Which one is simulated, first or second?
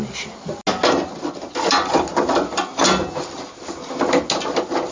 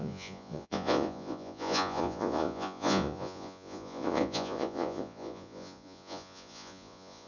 second